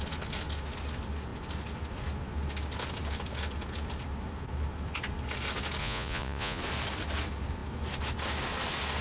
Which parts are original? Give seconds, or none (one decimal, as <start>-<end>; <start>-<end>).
0.0-5.8; 6.6-9.0